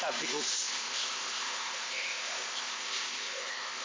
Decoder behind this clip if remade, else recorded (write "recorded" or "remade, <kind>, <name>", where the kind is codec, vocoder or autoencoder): remade, codec, ZipCodec